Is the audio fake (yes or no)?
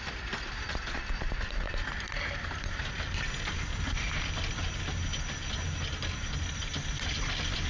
no